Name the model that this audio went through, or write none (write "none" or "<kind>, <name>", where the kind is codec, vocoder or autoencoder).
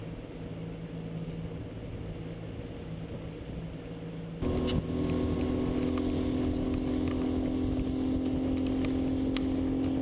none